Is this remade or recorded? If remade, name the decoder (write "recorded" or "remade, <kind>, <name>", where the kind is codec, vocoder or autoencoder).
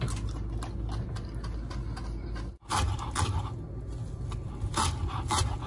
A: recorded